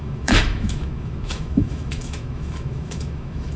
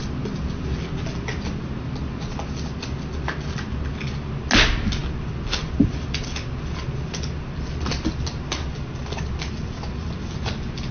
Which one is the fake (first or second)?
first